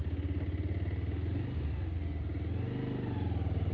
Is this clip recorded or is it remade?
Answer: recorded